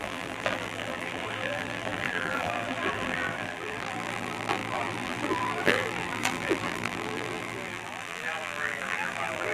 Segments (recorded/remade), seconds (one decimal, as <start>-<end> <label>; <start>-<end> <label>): 0.0-9.5 remade